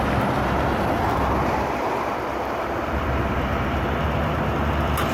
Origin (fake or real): fake